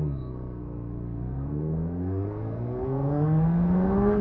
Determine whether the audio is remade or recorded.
remade